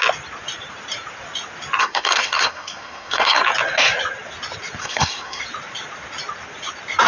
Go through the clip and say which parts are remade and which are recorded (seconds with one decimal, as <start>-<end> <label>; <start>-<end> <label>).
0.0-1.8 recorded; 1.8-3.4 remade; 3.4-4.8 recorded; 4.8-5.4 remade; 5.4-7.1 recorded